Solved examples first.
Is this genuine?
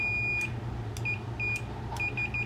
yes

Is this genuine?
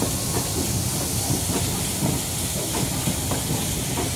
yes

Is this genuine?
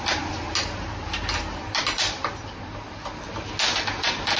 yes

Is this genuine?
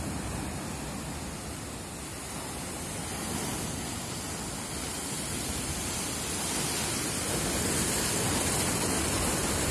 yes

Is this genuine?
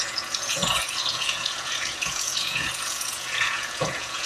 no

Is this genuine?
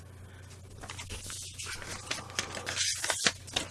yes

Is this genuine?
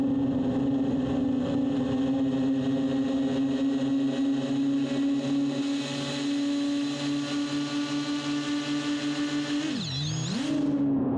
yes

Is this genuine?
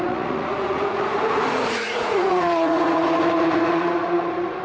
no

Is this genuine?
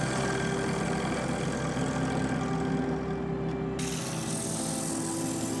yes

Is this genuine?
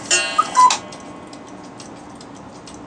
yes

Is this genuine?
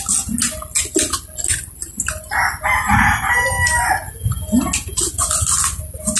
yes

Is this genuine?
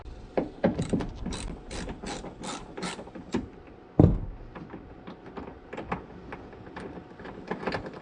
yes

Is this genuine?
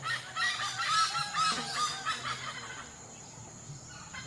yes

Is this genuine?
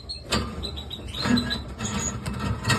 yes